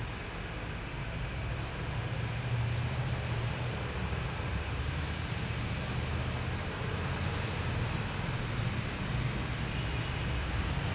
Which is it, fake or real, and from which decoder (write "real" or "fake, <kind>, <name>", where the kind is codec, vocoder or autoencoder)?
real